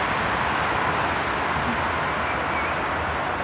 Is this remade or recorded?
recorded